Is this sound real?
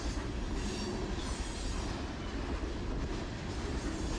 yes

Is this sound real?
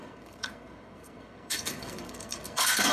no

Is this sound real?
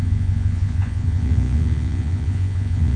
no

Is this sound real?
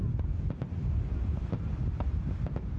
yes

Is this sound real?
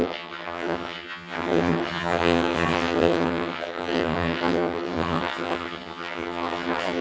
no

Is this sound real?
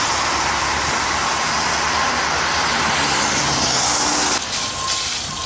yes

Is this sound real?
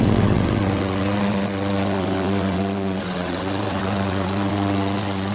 no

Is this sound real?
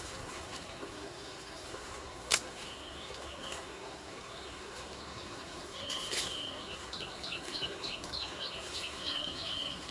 no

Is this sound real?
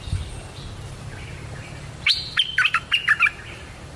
no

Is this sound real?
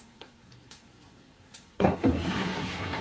no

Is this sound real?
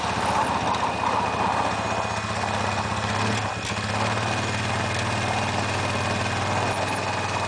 yes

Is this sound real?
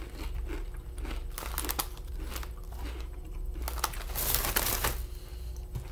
yes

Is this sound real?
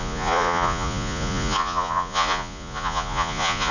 no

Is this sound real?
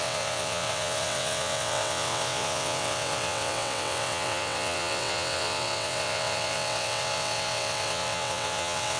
no